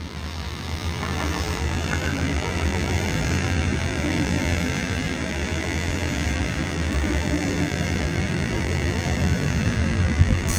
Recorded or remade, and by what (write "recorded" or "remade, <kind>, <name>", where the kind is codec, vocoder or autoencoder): remade, vocoder, BigVGAN v2